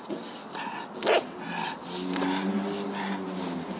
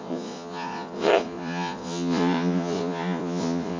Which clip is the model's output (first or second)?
second